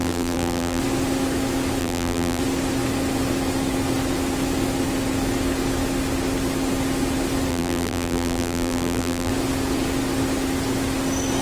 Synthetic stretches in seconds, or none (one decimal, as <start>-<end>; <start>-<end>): 0.0-0.8; 1.8-2.4; 7.5-9.3